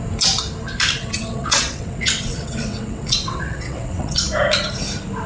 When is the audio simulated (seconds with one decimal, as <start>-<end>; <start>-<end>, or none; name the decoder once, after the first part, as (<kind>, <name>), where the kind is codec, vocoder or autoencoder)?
1.0-4.2 (vocoder, WaveNeXt)